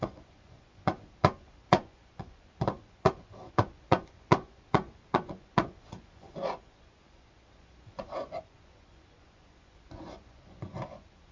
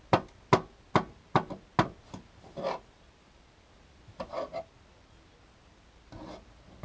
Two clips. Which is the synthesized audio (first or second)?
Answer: first